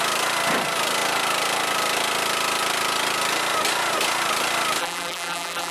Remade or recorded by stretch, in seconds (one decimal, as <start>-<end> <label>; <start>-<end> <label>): 0.0-4.8 recorded; 4.8-5.7 remade